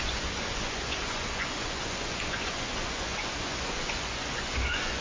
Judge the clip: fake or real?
fake